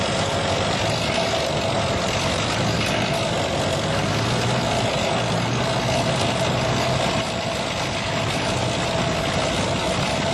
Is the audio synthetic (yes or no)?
no